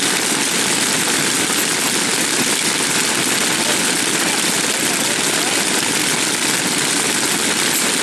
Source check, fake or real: real